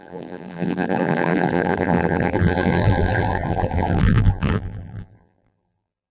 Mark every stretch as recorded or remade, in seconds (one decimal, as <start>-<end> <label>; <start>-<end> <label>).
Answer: 0.0-6.1 remade